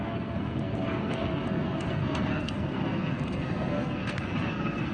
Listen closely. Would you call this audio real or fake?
fake